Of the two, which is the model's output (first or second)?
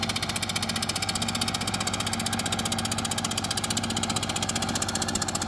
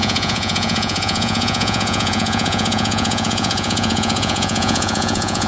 second